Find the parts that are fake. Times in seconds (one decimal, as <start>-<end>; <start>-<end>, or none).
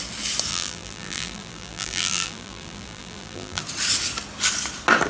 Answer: 0.5-3.6